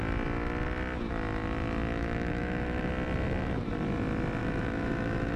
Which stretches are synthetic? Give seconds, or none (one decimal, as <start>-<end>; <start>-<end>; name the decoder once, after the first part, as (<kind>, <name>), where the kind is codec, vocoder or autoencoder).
1.9-2.9 (autoencoder, DAC-VAE); 4.4-5.4